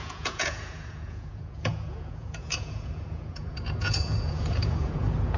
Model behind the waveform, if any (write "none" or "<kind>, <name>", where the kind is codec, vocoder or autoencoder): vocoder, Vocos